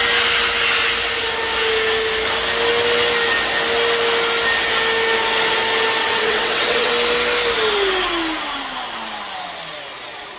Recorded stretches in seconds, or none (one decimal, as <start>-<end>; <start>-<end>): 0.0-6.0; 6.9-10.4